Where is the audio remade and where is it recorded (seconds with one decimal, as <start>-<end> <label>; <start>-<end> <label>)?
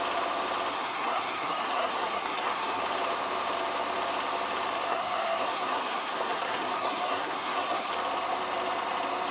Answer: 0.0-0.7 recorded; 0.7-2.8 remade; 2.8-4.9 recorded; 4.9-7.9 remade; 7.9-9.3 recorded